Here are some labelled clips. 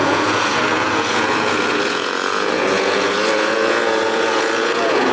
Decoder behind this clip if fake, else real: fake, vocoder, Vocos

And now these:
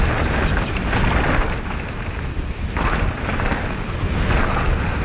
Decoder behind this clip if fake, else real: real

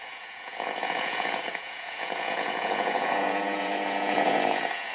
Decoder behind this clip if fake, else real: fake, vocoder, Vocos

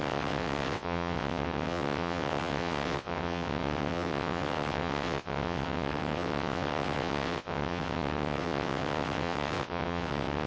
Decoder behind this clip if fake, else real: fake, vocoder, WaveNeXt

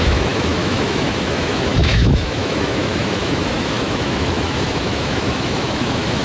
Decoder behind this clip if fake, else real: fake, autoencoder, DAC-VAE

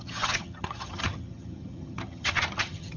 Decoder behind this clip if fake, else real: fake, vocoder, HiFi-GAN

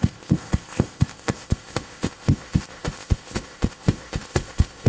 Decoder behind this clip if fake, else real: fake, codec, ZipCodec